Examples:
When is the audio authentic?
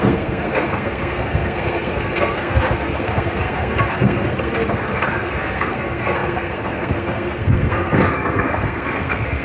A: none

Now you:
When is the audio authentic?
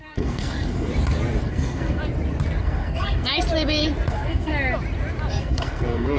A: 0.9-1.4; 2.0-2.6; 3.3-4.1; 4.5-5.3